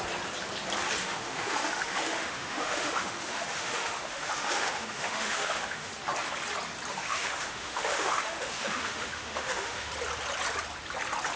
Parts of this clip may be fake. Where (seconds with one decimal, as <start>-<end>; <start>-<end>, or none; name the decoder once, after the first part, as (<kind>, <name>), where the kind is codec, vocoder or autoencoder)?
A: 1.0-5.9 (autoencoder, DAC-VAE); 6.9-9.9